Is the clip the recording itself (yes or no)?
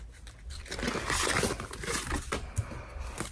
yes